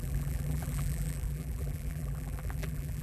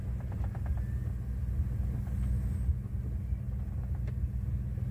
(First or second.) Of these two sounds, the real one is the second